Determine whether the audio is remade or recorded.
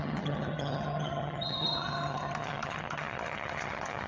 remade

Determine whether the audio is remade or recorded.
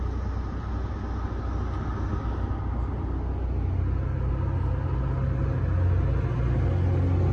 recorded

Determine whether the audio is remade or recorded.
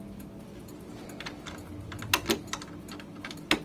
recorded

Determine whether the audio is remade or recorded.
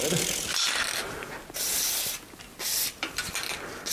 recorded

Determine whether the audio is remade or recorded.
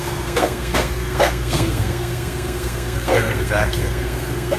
remade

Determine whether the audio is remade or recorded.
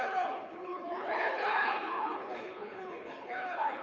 remade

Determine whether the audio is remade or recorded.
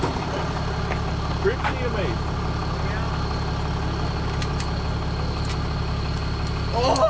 recorded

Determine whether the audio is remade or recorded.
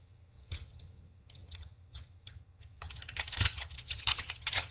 remade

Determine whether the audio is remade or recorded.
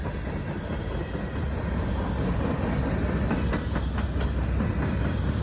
recorded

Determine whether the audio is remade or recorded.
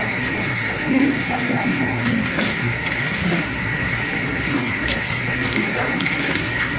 remade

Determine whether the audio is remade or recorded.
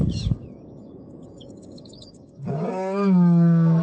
remade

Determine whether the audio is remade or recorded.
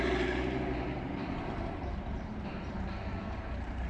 remade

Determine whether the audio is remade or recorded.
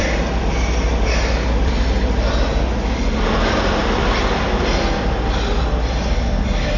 recorded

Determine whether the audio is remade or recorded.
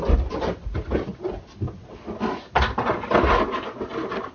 recorded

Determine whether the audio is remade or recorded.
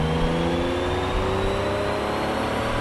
recorded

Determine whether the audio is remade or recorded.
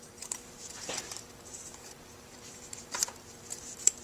remade